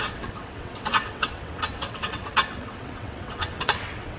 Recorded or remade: remade